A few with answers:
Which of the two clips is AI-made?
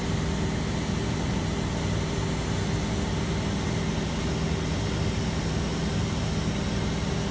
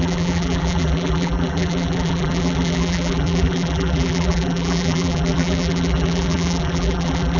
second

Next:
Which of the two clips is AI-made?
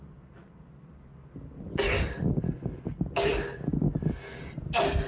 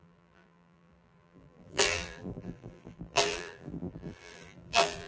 second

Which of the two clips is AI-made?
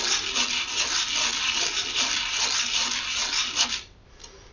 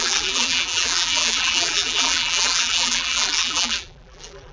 second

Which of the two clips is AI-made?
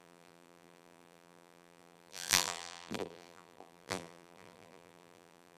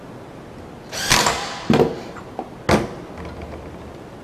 first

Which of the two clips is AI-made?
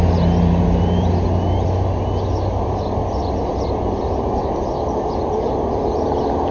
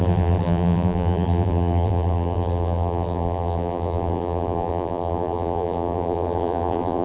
second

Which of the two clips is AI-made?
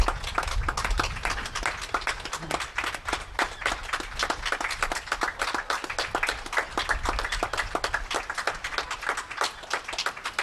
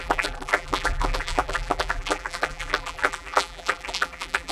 second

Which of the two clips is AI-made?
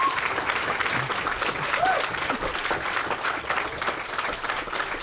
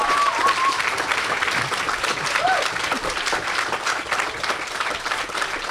second